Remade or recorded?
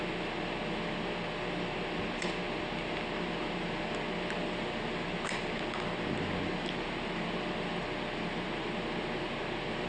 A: recorded